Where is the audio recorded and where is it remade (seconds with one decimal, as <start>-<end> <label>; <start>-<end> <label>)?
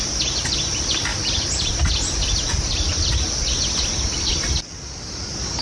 0.0-5.6 recorded